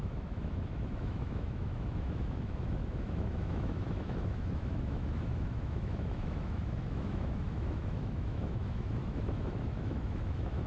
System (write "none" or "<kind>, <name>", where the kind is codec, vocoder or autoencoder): autoencoder, DAC-VAE